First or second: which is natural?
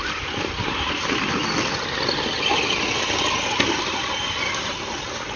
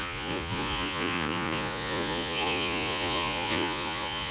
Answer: first